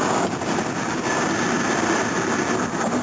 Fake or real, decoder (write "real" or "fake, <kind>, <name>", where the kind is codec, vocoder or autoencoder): real